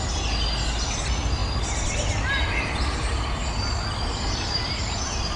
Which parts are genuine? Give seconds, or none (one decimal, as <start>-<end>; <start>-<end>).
0.0-5.4